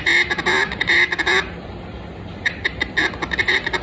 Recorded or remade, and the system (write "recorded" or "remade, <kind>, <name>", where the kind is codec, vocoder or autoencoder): recorded